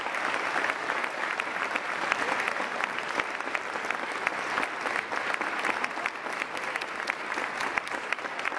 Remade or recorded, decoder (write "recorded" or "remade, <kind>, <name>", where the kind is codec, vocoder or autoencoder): recorded